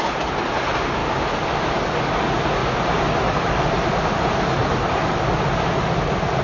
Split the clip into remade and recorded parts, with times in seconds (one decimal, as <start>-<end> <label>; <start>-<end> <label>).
0.0-2.6 recorded; 2.6-4.1 remade; 4.1-4.6 recorded; 4.6-5.2 remade; 5.2-6.4 recorded